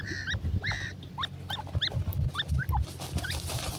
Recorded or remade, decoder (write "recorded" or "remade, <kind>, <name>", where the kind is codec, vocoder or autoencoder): recorded